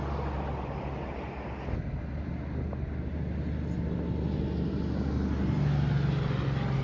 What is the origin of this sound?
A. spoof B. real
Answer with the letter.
B